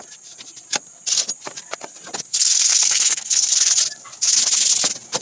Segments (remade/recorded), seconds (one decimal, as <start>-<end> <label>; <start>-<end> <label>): 0.0-2.3 recorded; 2.3-3.5 remade; 3.5-5.2 recorded